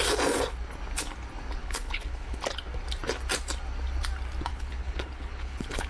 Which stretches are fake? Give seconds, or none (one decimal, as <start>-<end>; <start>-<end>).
1.6-2.4; 4.5-5.9